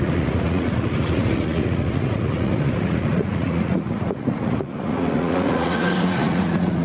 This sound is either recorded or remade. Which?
remade